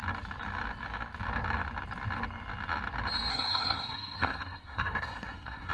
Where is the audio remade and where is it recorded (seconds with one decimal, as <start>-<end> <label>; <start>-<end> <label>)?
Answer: 0.0-3.3 recorded; 3.3-5.7 remade